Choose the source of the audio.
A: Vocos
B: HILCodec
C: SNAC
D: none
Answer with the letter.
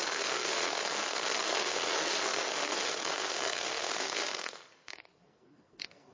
C